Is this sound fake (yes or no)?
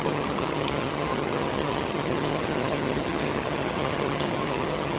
yes